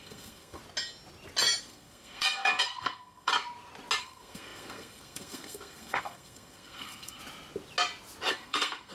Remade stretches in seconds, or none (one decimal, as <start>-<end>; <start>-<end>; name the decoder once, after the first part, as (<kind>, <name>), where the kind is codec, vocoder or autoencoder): 0.0-0.6 (codec, SNAC); 1.6-3.3; 4.0-7.2; 8.3-8.9